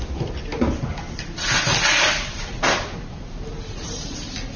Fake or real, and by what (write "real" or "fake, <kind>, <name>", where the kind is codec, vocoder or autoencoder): real